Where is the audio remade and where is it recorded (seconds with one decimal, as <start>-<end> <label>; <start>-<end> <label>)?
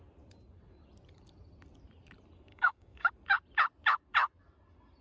0.0-2.5 recorded; 2.5-3.1 remade; 3.1-5.0 recorded